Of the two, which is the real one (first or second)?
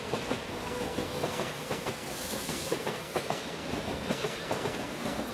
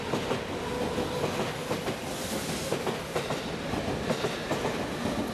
second